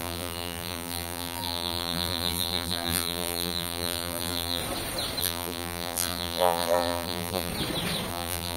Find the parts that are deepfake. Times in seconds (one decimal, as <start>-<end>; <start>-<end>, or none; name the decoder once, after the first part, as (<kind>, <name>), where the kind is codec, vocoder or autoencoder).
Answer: 0.0-4.6 (vocoder, BigVGAN v2); 5.2-7.5; 8.1-8.6